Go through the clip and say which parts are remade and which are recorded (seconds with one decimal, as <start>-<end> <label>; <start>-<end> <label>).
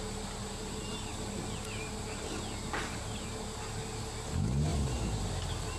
0.0-5.8 recorded